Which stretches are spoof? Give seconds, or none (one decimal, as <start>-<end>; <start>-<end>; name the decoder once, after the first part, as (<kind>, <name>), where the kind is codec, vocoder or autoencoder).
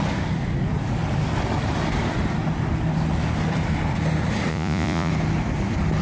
4.5-5.1 (vocoder, Vocos)